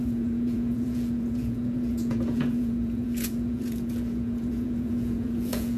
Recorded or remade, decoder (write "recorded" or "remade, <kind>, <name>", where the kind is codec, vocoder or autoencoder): remade, vocoder, Vocos